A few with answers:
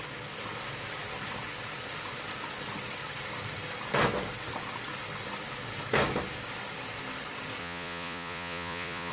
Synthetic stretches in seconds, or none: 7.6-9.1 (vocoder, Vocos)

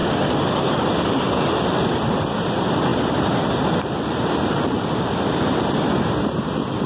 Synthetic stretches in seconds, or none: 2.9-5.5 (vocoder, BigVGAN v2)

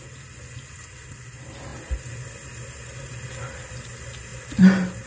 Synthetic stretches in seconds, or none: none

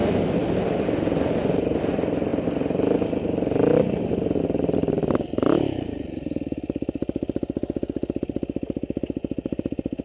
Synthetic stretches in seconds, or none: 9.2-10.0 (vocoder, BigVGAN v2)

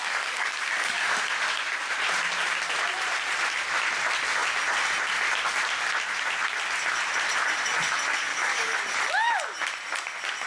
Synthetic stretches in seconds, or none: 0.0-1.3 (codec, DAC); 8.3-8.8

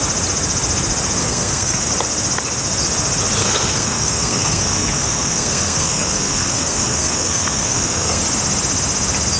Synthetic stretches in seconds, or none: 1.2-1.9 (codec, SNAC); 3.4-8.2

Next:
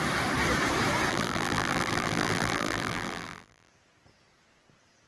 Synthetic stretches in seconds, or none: 1.1-3.7 (vocoder, BigVGAN v2)

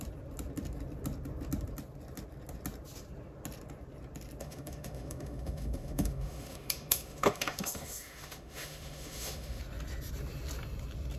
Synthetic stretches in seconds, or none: 4.4-9.6 (autoencoder, DAC-VAE)